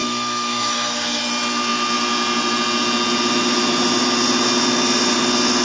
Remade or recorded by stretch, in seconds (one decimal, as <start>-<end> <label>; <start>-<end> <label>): 0.0-1.2 remade; 1.2-5.6 recorded